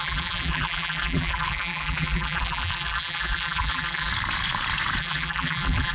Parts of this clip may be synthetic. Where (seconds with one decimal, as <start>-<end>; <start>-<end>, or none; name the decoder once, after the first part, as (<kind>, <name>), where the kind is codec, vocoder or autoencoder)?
0.0-4.1 (vocoder, BigVGAN v2); 5.0-5.9